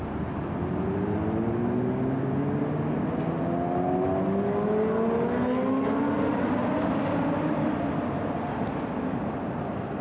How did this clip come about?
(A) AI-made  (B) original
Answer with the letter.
B